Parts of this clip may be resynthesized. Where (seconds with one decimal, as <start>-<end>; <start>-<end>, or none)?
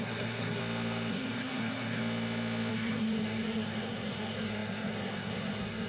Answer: 0.0-0.6; 1.1-2.0; 2.7-5.9